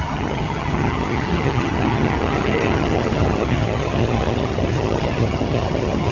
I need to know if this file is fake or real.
fake